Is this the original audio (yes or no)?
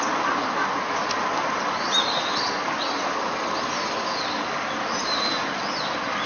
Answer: yes